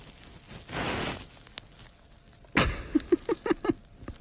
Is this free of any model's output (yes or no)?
yes